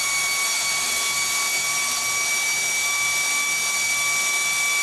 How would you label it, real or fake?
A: real